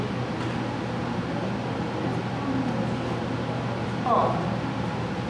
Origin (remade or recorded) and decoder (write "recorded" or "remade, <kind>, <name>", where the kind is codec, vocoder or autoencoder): recorded